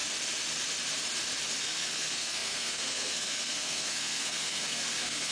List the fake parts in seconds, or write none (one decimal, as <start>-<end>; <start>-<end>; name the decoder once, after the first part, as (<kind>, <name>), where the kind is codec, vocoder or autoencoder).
1.6-5.3 (codec, SNAC)